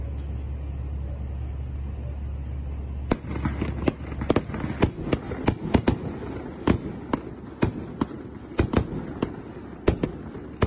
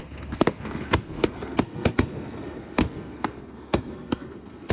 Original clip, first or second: first